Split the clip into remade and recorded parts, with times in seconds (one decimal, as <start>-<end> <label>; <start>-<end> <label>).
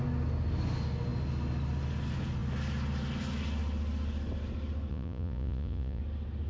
0.0-4.9 recorded; 4.9-6.0 remade; 6.0-6.5 recorded